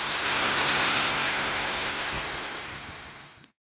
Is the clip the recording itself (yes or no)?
no